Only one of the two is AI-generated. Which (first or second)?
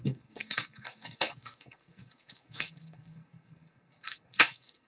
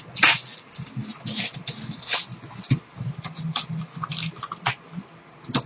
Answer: first